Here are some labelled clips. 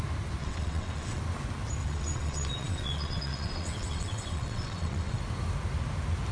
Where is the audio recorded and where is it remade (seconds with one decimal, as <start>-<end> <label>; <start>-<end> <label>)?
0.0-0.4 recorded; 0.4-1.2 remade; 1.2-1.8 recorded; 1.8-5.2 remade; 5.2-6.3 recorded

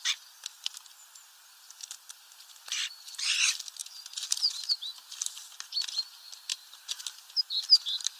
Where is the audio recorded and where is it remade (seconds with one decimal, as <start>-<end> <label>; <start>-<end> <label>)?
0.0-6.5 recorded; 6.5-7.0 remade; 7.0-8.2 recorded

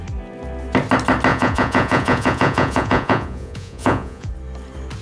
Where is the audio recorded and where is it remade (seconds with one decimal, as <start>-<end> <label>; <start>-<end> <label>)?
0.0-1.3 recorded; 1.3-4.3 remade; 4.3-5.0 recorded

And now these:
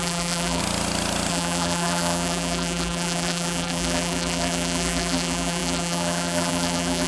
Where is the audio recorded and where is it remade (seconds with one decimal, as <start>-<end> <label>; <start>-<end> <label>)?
0.0-0.6 remade; 0.6-1.3 recorded; 1.3-7.1 remade

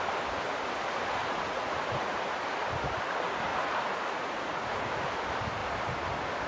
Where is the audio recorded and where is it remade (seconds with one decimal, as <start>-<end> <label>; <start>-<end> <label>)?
0.0-1.2 recorded; 1.2-2.4 remade; 2.4-3.5 recorded; 3.5-4.9 remade; 4.9-6.5 recorded

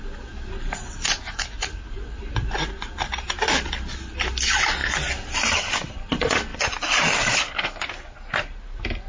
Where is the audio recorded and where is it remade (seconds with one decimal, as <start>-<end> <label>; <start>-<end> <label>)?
0.0-1.7 recorded; 1.7-2.5 remade; 2.5-6.5 recorded; 6.5-7.0 remade; 7.0-9.1 recorded

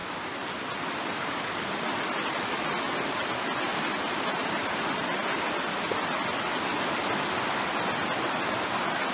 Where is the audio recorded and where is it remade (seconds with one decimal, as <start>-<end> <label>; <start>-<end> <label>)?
0.0-9.1 recorded